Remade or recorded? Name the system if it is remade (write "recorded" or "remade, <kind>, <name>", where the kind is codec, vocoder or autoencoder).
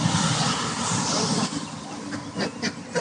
recorded